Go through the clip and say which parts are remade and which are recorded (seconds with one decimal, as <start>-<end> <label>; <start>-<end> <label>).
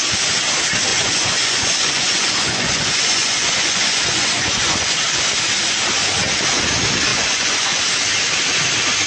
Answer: 0.0-0.9 recorded; 0.9-5.2 remade; 5.2-7.1 recorded; 7.1-7.8 remade; 7.8-9.1 recorded